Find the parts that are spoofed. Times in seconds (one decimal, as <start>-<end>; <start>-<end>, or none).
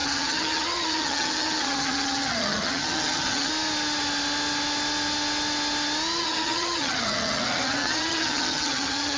0.0-3.5; 6.2-9.2